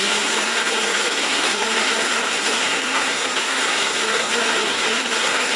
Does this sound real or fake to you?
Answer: fake